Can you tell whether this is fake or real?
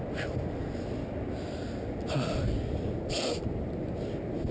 real